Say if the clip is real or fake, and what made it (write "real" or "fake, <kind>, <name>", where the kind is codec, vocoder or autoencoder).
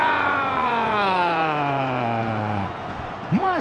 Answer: fake, vocoder, Vocos